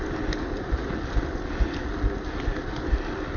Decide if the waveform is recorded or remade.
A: recorded